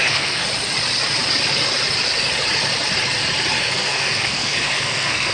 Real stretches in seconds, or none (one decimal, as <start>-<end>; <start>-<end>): 0.4-3.6

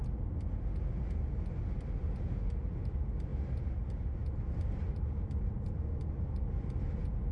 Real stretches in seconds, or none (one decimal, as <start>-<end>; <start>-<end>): 0.0-7.3

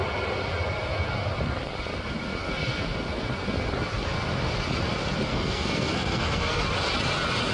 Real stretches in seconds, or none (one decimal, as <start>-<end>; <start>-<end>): 0.0-5.3; 6.6-7.5

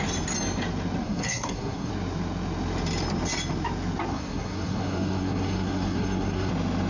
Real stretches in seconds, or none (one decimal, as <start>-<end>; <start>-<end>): 0.0-1.0; 1.9-4.1; 6.5-6.9

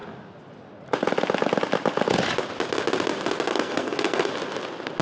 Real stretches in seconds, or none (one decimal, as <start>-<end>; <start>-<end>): 0.0-3.5; 4.3-5.0